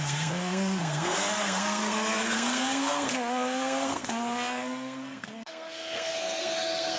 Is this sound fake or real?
fake